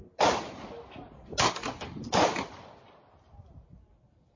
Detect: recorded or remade recorded